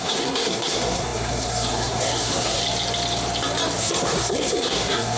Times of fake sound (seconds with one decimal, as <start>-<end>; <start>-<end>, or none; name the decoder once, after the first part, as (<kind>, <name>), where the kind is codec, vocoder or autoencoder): 0.0-2.6 (codec, SNAC); 3.8-5.2